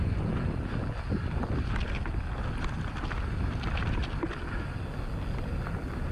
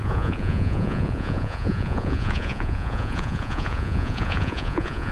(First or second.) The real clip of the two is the first